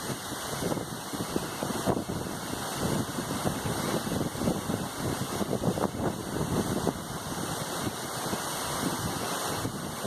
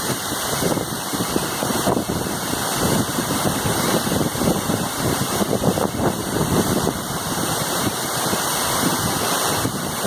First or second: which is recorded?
first